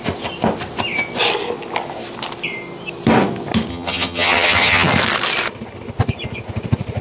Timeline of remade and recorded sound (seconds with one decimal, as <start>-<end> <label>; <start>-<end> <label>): 0.0-3.7 recorded; 3.7-4.9 remade; 4.9-7.0 recorded